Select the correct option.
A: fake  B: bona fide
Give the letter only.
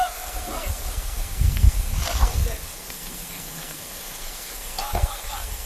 A